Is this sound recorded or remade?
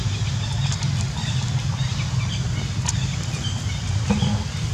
recorded